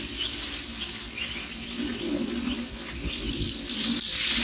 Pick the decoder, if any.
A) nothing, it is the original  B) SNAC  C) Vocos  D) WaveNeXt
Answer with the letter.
A